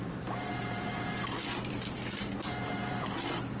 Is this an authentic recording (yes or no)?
no